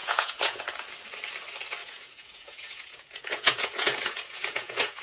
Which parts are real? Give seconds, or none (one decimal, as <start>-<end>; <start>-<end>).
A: 0.6-1.8